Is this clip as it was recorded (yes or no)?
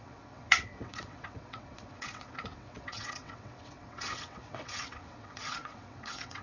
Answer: no